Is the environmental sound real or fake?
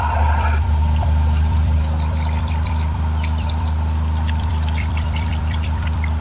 fake